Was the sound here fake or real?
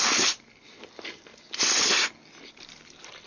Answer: real